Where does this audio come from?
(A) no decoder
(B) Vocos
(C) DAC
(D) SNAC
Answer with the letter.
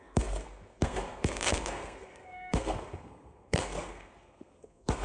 D